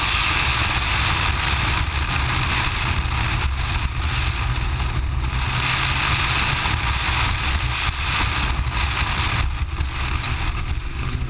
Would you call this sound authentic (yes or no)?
yes